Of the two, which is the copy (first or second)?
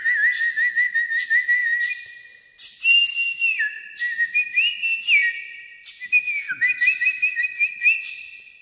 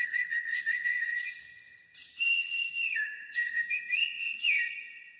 second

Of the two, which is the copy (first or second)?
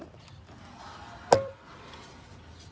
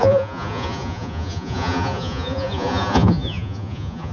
second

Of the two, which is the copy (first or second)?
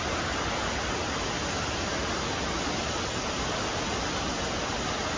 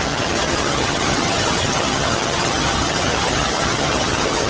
second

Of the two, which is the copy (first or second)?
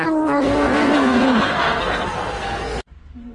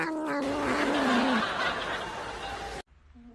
first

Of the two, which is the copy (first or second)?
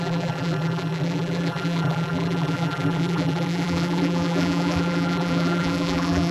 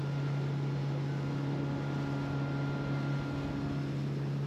first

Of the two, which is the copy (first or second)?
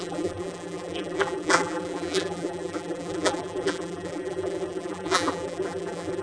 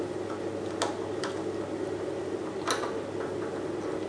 first